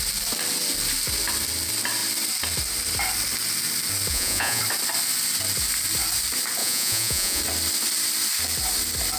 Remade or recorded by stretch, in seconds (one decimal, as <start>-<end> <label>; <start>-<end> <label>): 0.0-4.1 recorded; 4.1-4.6 remade; 4.6-6.6 recorded; 6.6-7.4 remade; 7.4-9.2 recorded